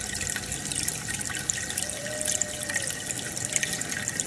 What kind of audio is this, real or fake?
real